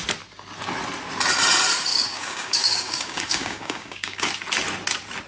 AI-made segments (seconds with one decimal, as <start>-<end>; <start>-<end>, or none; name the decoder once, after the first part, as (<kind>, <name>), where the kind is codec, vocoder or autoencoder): 1.9-4.3 (codec, DAC)